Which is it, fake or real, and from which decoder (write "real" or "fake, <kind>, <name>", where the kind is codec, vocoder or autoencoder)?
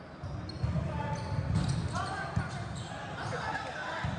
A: real